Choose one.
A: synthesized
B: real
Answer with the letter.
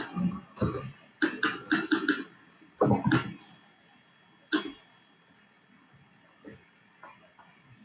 B